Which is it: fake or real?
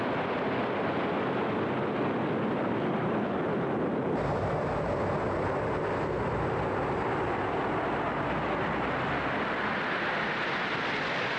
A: real